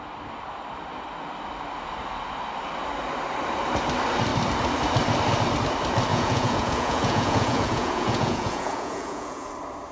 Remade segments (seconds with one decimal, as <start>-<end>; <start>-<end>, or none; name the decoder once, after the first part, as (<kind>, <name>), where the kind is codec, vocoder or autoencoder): 6.1-9.5 (vocoder, Vocos)